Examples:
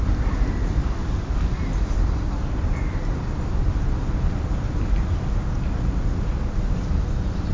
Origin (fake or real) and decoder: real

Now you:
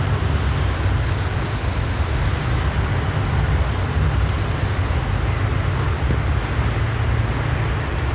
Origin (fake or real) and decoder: real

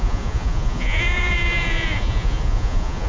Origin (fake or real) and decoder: fake, vocoder, Vocos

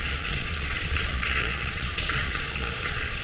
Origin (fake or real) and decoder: fake, vocoder, Vocos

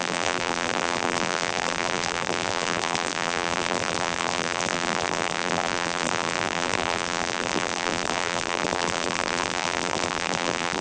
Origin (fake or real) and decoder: fake, vocoder, BigVGAN v2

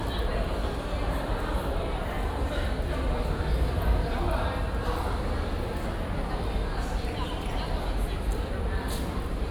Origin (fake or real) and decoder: real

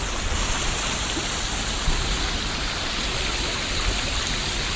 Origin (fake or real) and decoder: real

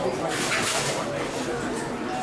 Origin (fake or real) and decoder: real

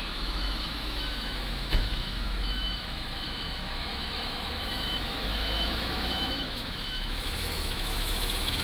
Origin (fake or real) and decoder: fake, autoencoder, DAC-VAE